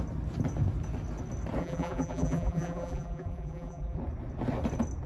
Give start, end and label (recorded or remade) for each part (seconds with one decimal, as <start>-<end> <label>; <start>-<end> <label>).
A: 0.0-1.6 recorded; 1.6-4.0 remade; 4.0-5.1 recorded